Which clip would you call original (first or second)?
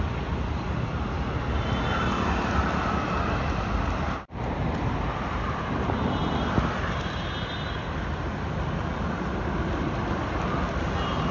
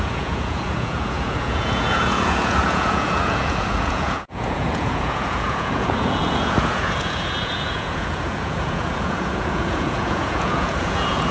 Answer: first